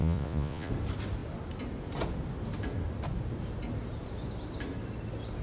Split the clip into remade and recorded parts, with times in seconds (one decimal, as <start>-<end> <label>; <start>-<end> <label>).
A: 0.0-0.7 remade; 0.7-5.4 recorded